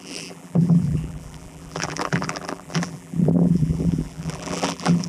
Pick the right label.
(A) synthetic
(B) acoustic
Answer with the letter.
A